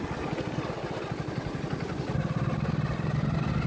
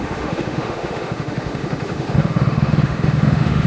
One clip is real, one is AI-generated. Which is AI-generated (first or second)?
second